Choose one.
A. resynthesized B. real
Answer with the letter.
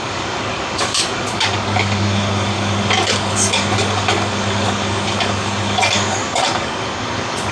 A